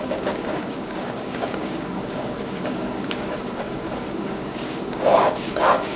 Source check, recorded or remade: remade